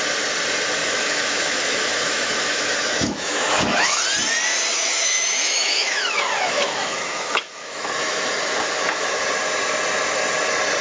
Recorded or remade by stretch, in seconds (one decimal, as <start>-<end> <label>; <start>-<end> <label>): 0.0-0.8 recorded; 0.8-4.0 remade; 4.0-4.7 recorded; 4.7-9.2 remade; 9.2-10.8 recorded